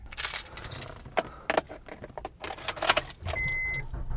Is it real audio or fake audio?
real